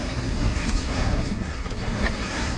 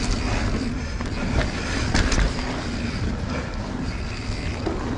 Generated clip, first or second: first